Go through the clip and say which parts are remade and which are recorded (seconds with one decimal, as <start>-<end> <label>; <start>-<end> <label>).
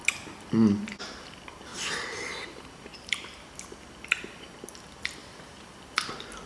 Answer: 0.0-1.7 recorded; 1.7-2.3 remade; 2.3-2.9 recorded; 2.9-3.4 remade; 3.4-5.2 recorded; 5.2-6.1 remade; 6.1-6.5 recorded